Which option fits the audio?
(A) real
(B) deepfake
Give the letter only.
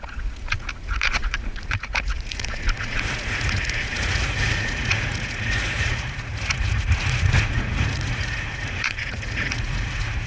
B